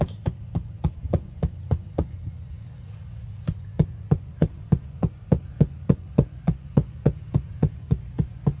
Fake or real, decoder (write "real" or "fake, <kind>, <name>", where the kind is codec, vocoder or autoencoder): fake, vocoder, Vocos